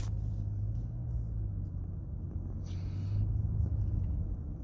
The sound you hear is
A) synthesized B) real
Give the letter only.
B